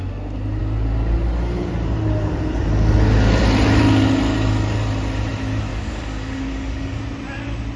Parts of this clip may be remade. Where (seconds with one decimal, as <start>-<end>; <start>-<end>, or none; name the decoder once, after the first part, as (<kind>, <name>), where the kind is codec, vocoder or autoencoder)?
5.7-7.0 (codec, DAC)